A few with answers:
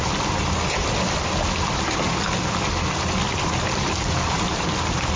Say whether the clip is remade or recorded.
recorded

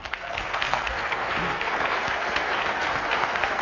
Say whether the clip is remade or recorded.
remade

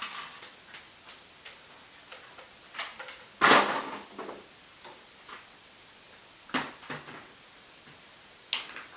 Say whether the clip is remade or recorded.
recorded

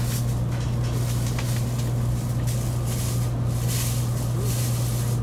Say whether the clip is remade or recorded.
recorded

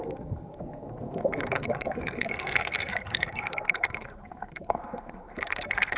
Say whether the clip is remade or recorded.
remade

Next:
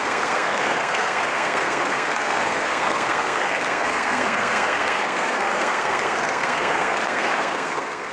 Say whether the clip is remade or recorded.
remade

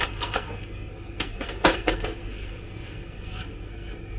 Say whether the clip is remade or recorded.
remade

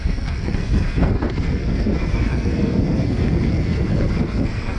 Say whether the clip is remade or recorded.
remade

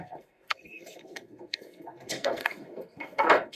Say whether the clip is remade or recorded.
remade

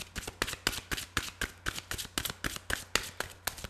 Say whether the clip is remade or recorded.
recorded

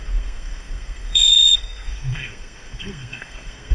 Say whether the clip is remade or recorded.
remade